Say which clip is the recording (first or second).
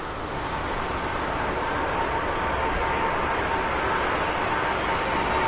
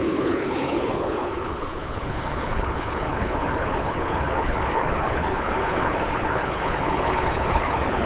first